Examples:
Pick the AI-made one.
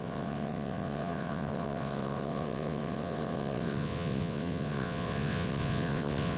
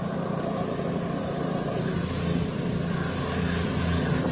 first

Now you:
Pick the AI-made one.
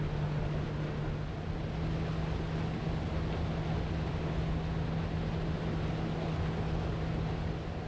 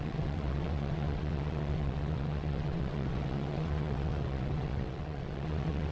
second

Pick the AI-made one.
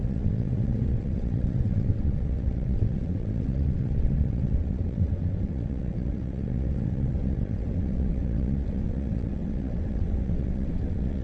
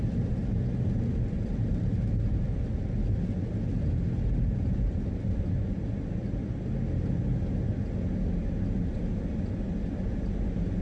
first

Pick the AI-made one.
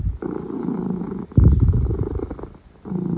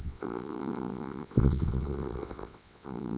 second